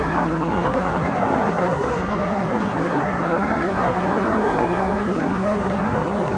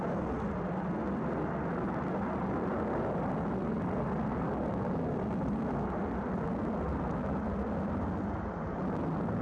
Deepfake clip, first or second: first